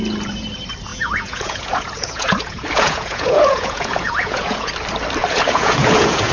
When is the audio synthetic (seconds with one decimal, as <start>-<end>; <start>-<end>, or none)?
0.9-4.7; 5.2-6.3